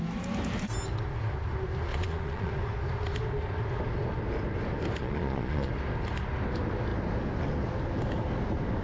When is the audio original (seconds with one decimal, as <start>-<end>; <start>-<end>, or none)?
0.0-1.9; 2.5-5.0; 5.7-8.8